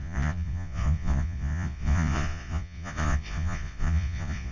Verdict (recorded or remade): remade